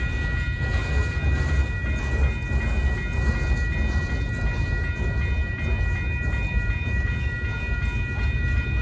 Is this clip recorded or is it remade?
recorded